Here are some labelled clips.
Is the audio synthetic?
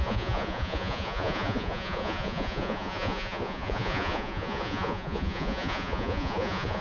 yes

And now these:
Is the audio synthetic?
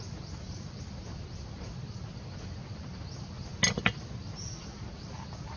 no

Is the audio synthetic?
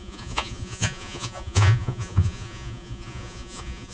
yes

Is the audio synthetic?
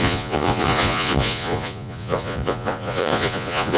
yes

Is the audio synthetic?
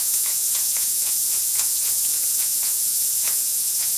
yes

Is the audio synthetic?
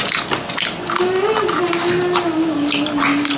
no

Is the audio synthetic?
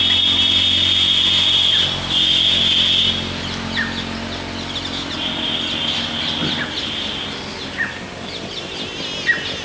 no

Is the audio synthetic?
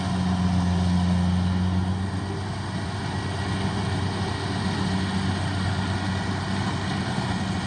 no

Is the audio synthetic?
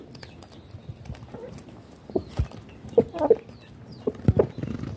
no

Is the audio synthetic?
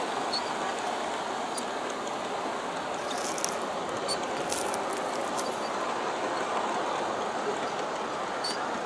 no